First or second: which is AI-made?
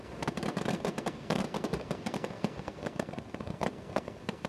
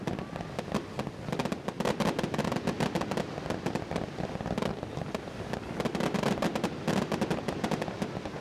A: first